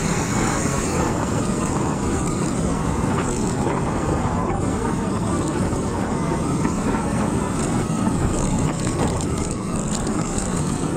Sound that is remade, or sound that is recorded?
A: remade